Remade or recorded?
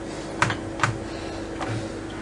recorded